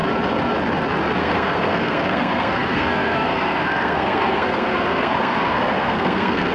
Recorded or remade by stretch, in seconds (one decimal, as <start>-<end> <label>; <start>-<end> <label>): 0.0-1.2 recorded; 1.2-6.5 remade